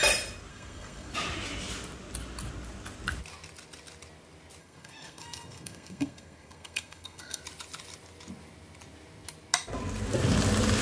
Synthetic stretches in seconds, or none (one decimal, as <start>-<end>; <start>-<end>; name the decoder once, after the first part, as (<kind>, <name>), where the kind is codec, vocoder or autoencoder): 0.5-1.1 (codec, SNAC); 4.6-7.4